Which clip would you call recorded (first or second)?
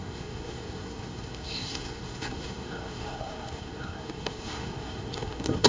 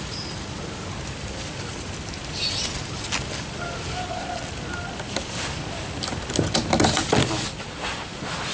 second